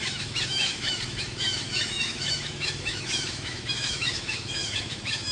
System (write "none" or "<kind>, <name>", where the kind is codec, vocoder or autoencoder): autoencoder, DAC-VAE